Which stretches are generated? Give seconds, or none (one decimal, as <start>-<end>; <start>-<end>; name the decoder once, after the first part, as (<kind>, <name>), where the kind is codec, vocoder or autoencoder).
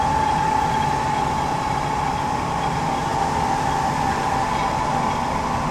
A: none